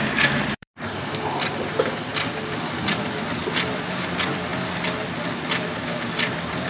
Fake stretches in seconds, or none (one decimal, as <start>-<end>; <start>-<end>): 0.0-2.1; 3.7-6.7